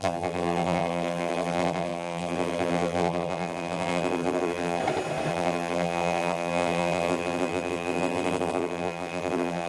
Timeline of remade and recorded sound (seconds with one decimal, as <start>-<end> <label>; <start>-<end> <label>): 0.0-4.8 remade; 4.8-5.3 recorded; 5.3-9.7 remade